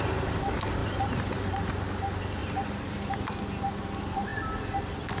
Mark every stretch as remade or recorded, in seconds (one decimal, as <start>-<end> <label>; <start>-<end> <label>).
0.0-0.8 recorded; 0.8-1.7 remade; 1.7-2.4 recorded; 2.4-3.1 remade; 3.1-5.2 recorded